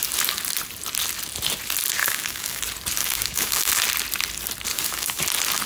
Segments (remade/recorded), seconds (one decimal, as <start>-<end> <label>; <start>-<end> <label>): 0.0-2.0 recorded; 2.0-2.6 remade; 2.6-3.0 recorded; 3.0-3.8 remade; 3.8-4.7 recorded; 4.7-5.2 remade; 5.2-5.7 recorded